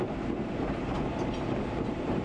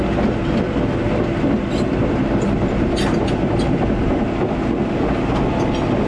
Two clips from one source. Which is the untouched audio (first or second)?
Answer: second